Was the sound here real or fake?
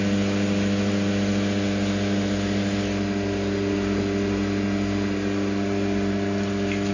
real